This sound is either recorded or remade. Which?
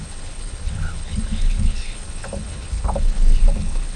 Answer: remade